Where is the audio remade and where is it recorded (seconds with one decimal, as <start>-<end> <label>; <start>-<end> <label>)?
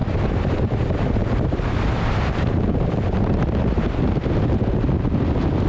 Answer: 0.0-3.4 remade; 3.4-5.7 recorded